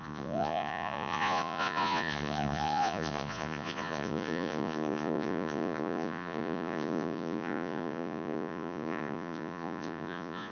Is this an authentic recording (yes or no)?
no